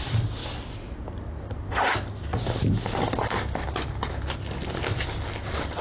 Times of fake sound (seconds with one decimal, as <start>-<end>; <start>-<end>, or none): none